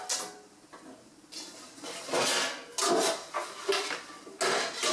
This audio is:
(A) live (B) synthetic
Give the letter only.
A